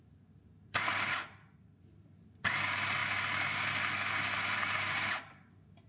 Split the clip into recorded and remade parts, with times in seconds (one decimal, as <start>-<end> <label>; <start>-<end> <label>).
0.0-3.0 remade; 3.0-4.4 recorded; 4.4-5.9 remade